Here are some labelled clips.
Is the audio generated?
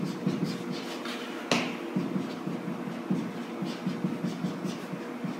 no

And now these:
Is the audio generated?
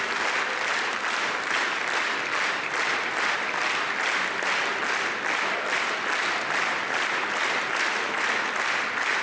no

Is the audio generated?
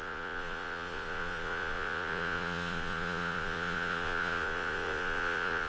yes